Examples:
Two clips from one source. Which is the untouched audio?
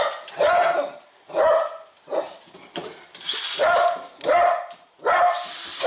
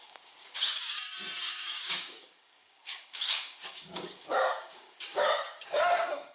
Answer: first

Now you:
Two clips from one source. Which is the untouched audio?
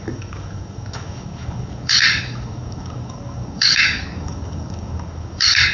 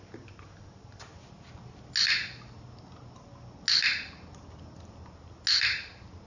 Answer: second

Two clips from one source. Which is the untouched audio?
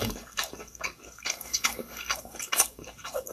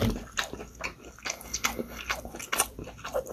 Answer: second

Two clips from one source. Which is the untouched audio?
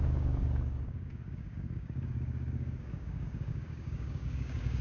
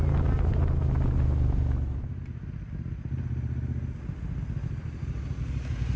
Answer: second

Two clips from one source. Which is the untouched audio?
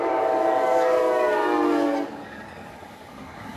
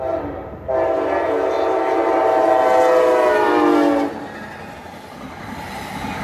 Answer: second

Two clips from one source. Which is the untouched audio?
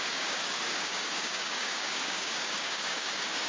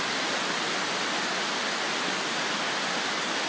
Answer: second